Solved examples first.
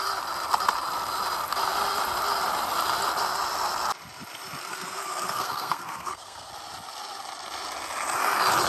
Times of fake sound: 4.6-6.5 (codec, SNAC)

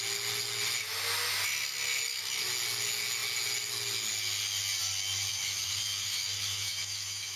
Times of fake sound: 5.3-7.4 (autoencoder, DAC-VAE)

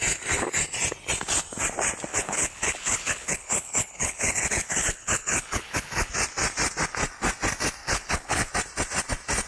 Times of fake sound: 2.1-6.1 (codec, HILCodec); 7.8-8.5

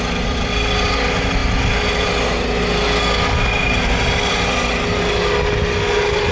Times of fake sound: none